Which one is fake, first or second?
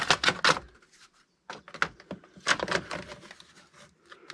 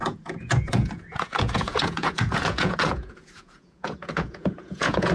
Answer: second